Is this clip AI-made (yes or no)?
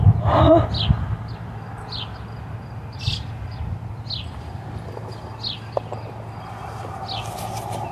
no